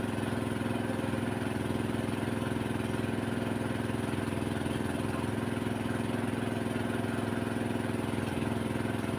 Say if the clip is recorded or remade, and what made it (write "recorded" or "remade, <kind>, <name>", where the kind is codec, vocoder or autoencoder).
recorded